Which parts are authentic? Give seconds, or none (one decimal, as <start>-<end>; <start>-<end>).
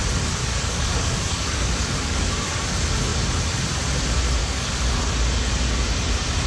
0.0-0.4; 2.2-4.4; 4.9-6.5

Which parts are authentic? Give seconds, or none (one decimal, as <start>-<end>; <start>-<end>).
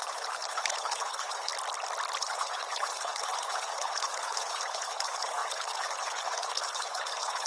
1.5-2.2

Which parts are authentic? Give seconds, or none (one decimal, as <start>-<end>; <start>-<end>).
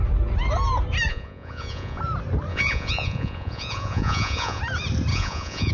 0.0-1.1; 2.0-2.5; 4.6-5.1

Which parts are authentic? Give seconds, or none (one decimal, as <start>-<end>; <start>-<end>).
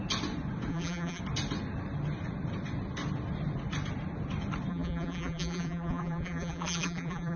0.0-0.7; 1.2-4.7